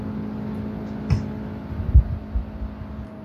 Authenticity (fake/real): real